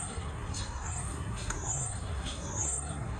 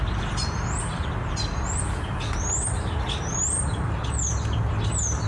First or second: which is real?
second